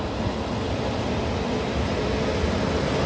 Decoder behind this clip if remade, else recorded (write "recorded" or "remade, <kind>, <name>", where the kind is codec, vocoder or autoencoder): recorded